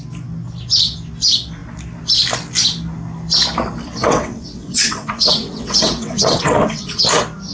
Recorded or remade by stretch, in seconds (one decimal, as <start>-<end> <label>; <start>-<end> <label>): 0.0-4.0 recorded; 4.0-7.0 remade; 7.0-7.5 recorded